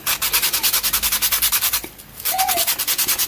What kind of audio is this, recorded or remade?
recorded